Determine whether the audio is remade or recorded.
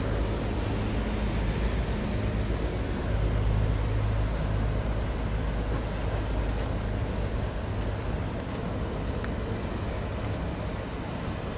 recorded